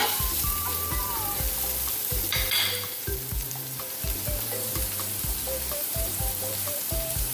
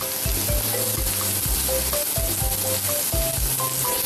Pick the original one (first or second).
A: second